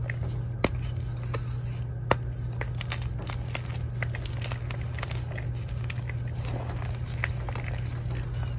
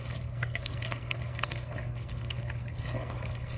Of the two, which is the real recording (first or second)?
first